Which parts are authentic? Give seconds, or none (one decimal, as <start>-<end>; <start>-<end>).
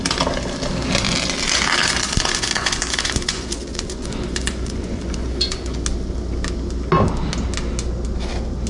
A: 0.0-1.8; 5.8-8.7